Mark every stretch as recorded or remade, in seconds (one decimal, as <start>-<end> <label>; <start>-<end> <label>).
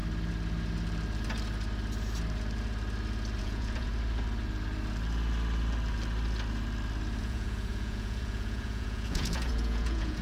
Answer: 0.0-3.4 recorded; 3.4-3.9 remade; 3.9-7.2 recorded; 7.2-10.2 remade